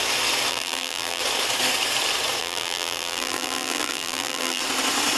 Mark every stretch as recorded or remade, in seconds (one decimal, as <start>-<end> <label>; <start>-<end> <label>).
0.0-0.5 recorded; 0.5-1.2 remade; 1.2-2.4 recorded; 2.4-4.6 remade; 4.6-5.2 recorded